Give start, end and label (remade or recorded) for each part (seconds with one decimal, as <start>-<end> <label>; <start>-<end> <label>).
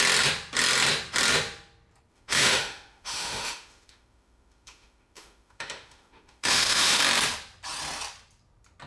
0.0-2.1 recorded; 2.1-7.0 remade; 7.0-8.9 recorded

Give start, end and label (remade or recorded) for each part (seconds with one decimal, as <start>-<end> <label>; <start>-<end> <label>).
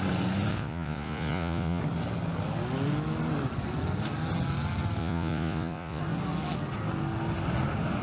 0.0-0.5 recorded; 0.5-1.8 remade; 1.8-5.0 recorded; 5.0-6.0 remade; 6.0-8.0 recorded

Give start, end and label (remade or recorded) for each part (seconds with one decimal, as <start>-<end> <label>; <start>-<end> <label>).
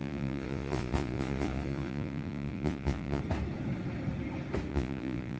0.0-3.2 remade; 3.2-4.7 recorded; 4.7-5.4 remade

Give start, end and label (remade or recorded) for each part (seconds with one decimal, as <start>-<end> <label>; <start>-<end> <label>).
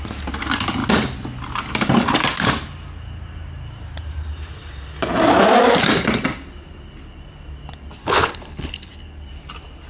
0.0-8.0 recorded; 8.0-8.9 remade; 8.9-9.9 recorded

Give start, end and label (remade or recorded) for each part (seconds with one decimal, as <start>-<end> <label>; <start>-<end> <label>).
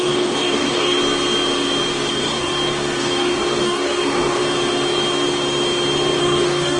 0.0-1.0 remade; 1.0-2.1 recorded; 2.1-2.5 remade; 2.5-3.0 recorded; 3.0-4.4 remade; 4.4-6.2 recorded; 6.2-6.8 remade